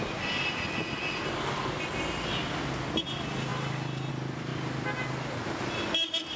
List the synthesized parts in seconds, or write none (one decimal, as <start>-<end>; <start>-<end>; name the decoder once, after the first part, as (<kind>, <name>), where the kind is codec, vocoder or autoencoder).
none